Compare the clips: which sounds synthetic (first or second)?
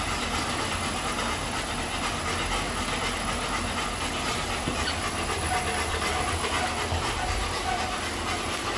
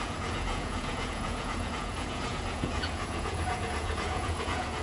second